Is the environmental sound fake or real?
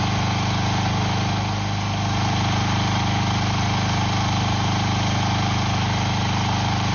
real